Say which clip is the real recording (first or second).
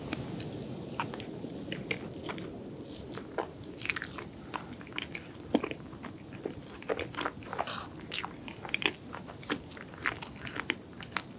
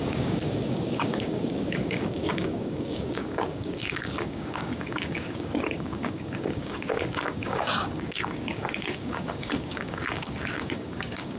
first